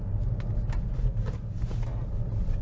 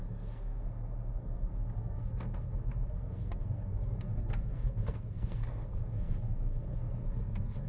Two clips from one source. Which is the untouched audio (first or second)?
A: first